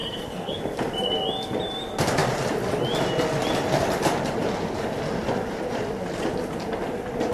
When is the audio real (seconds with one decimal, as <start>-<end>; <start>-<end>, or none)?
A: 0.6-7.3